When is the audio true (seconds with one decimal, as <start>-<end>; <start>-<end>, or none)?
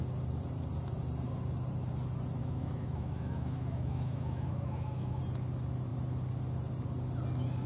0.0-2.4; 5.2-7.7